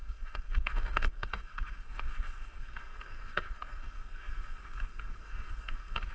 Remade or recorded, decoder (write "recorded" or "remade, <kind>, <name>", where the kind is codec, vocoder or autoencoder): remade, codec, SNAC